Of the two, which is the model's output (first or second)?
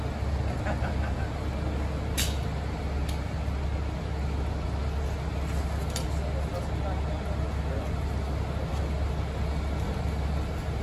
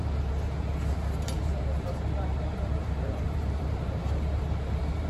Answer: second